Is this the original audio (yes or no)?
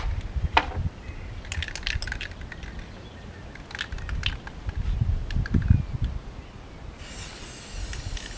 yes